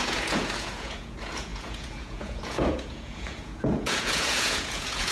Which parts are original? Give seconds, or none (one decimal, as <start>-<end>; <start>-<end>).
none